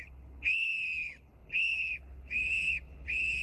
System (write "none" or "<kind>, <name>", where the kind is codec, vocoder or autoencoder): codec, HILCodec